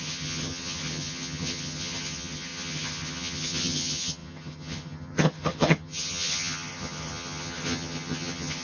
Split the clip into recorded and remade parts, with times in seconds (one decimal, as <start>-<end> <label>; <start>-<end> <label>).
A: 0.0-8.6 remade